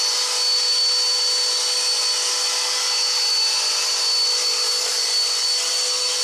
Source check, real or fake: real